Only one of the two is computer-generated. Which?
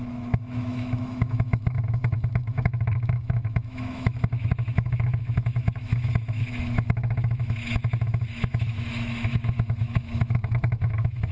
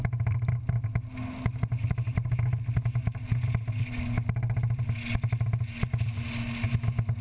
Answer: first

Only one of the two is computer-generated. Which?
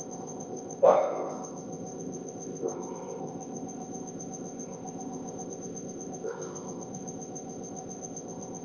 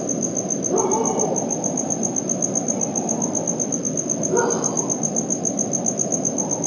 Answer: first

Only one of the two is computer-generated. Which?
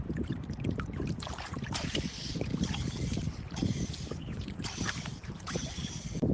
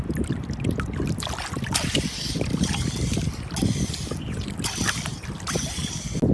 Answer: first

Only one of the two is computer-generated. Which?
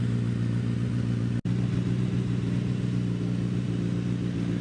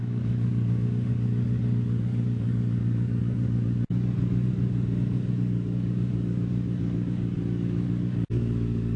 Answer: second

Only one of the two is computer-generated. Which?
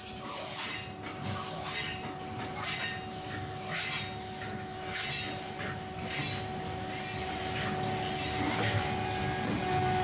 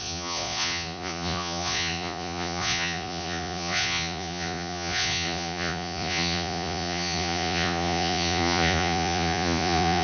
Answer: second